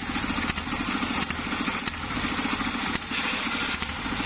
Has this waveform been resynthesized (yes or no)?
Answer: no